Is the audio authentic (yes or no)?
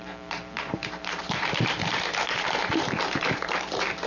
no